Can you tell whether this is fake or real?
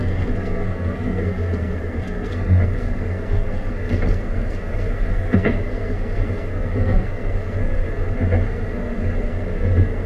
fake